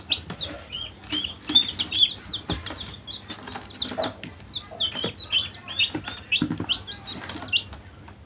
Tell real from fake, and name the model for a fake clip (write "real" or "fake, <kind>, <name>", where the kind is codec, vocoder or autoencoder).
real